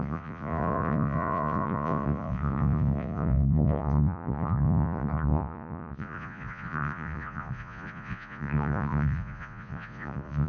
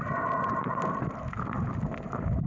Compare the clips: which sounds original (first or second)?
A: second